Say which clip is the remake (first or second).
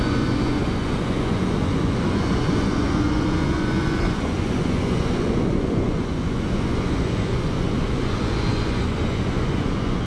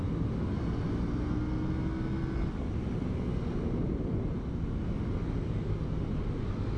first